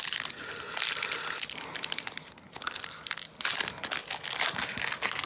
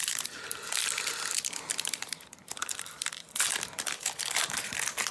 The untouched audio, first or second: first